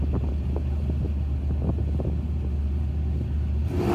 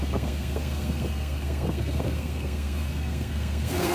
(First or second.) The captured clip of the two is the first